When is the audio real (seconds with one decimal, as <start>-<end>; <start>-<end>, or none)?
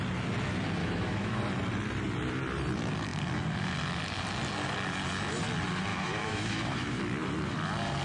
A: 0.0-0.8; 1.4-5.9; 7.0-8.0